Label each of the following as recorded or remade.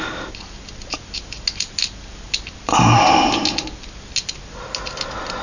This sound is recorded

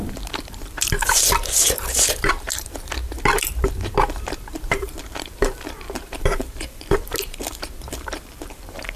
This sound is remade